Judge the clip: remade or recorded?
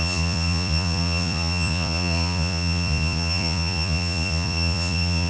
remade